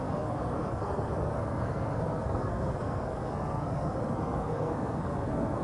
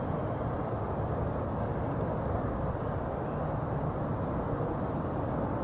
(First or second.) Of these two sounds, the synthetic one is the first